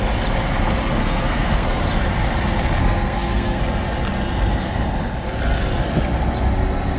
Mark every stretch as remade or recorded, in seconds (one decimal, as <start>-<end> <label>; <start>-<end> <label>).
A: 0.0-1.0 recorded; 1.0-1.8 remade; 1.8-2.8 recorded; 2.8-3.6 remade; 3.6-7.0 recorded